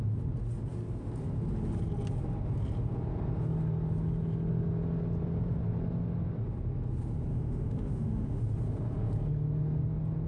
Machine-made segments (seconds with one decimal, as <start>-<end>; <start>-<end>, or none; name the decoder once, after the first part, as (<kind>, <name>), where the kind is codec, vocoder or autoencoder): 7.3-8.4 (autoencoder, DAC-VAE)